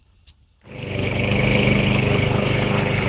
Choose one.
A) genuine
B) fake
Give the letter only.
B